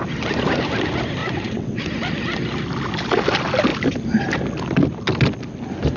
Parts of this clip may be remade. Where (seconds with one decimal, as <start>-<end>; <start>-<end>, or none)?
1.2-1.8